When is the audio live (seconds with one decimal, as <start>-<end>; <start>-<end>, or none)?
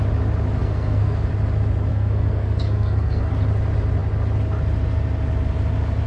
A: 0.0-0.6; 1.3-1.9; 3.3-6.1